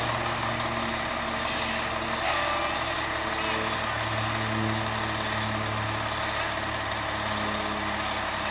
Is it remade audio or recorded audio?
recorded